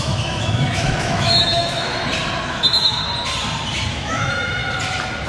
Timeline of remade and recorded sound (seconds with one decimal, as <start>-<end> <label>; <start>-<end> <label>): 0.0-1.9 remade; 1.9-2.5 recorded; 2.5-3.0 remade; 3.0-3.9 recorded; 3.9-4.6 remade; 4.6-5.3 recorded